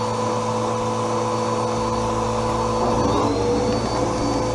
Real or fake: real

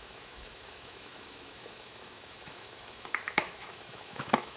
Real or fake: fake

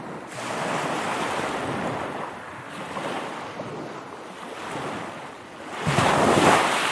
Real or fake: real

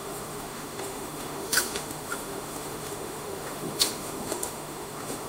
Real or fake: fake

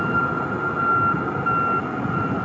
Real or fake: real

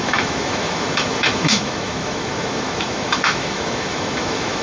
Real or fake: fake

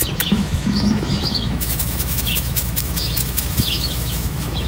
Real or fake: fake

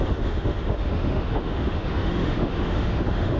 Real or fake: fake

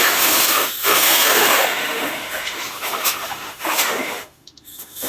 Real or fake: fake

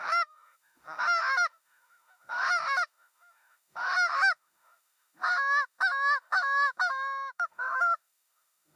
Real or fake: fake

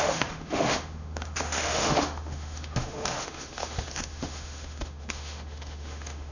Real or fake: fake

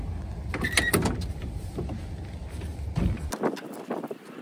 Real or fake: real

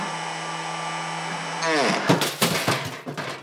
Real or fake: real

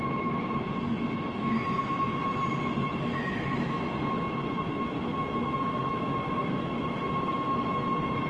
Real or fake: fake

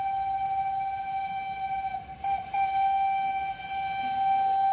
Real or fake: real